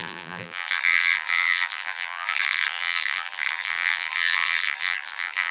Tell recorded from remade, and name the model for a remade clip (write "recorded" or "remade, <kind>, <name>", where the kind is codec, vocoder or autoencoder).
remade, vocoder, BigVGAN v2